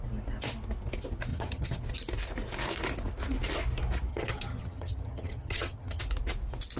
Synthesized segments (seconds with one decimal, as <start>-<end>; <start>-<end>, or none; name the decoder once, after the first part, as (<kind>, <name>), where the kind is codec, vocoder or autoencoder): 1.3-1.8 (vocoder, HiFi-GAN); 4.1-6.0

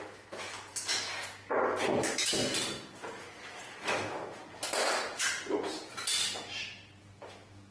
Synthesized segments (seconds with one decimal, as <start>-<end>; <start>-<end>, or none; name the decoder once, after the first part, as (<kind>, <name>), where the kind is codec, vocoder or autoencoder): 0.0-1.1 (autoencoder, DAC-VAE); 2.0-2.4; 3.7-4.4; 7.0-7.7

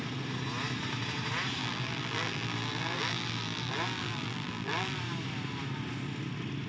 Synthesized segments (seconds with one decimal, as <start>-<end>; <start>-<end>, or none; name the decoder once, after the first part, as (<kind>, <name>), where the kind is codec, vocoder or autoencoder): 1.6-5.0 (vocoder, BigVGAN v2)

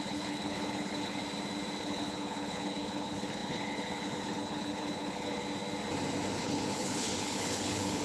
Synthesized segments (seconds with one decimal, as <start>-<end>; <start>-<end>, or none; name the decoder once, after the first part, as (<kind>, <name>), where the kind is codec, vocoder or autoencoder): 0.0-1.2 (codec, HILCodec); 1.8-5.4; 6.4-8.0

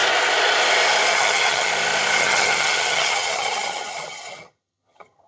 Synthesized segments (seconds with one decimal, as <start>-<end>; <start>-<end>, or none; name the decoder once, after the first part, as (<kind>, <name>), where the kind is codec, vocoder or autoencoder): 1.1-1.7 (vocoder, HiFi-GAN); 2.2-5.3

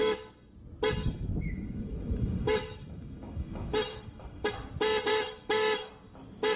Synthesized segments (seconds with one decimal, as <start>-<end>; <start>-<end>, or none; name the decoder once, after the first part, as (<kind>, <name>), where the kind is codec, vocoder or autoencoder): 1.0-4.5 (autoencoder, DAC-VAE); 5.1-5.9